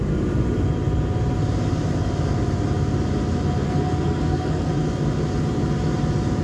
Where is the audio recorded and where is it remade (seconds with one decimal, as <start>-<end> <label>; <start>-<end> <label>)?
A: 0.0-3.6 recorded; 3.6-4.7 remade; 4.7-6.4 recorded